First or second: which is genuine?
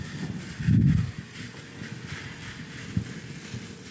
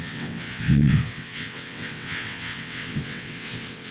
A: first